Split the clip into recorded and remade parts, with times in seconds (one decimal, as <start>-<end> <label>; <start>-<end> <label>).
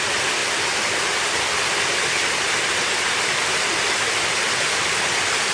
0.0-5.5 recorded